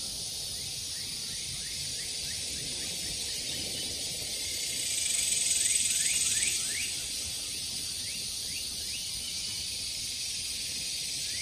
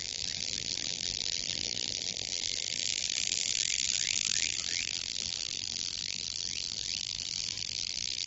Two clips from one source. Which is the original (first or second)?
first